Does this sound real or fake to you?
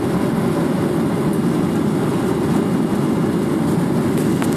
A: real